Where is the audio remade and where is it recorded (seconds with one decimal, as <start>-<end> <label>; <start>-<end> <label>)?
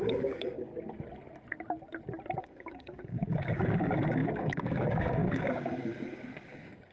0.0-0.7 remade; 0.7-2.4 recorded; 2.4-6.9 remade